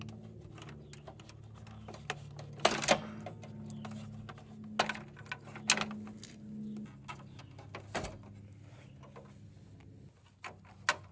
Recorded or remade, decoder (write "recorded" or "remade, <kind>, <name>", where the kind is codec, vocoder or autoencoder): recorded